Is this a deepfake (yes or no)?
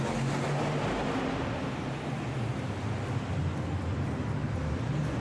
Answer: no